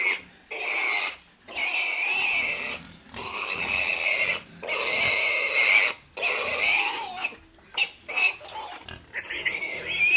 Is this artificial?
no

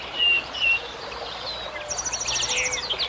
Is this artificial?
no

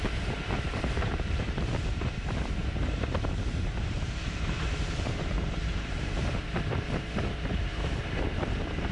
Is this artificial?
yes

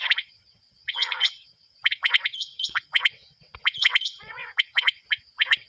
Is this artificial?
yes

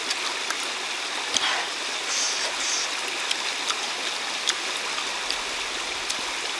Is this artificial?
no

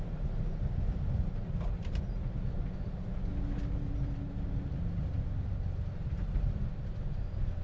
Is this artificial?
no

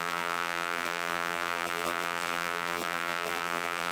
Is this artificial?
yes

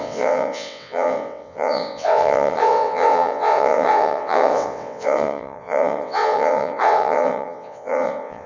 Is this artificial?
yes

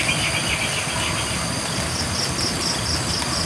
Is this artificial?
no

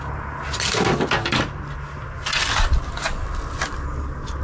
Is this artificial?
no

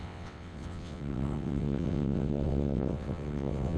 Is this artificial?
yes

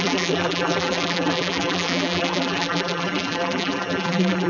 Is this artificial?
yes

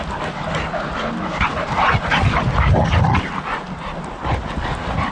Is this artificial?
no